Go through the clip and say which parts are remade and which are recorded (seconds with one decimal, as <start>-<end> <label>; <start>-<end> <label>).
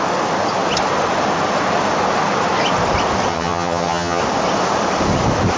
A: 0.0-3.3 recorded; 3.3-4.2 remade; 4.2-5.6 recorded